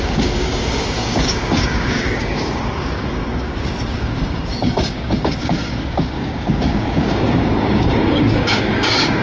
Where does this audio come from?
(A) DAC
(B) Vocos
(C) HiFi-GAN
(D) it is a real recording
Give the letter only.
A